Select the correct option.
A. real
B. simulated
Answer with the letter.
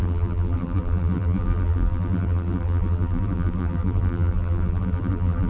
B